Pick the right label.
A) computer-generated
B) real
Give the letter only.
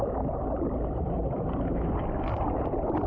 A